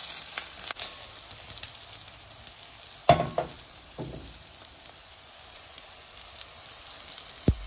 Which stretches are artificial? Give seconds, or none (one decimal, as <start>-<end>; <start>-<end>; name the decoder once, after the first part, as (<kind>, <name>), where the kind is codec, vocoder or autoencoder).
5.0-6.1 (vocoder, Vocos)